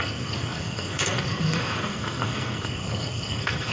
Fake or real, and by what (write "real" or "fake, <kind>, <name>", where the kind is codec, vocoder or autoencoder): fake, codec, SNAC